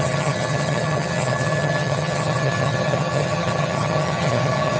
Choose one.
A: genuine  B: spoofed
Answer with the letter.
B